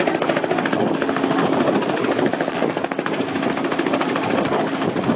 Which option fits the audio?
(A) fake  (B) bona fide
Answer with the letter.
B